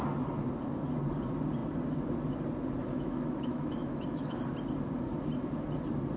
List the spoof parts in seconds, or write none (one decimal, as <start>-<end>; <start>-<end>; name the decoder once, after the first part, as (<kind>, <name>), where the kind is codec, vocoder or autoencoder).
2.8-4.4 (autoencoder, DAC-VAE)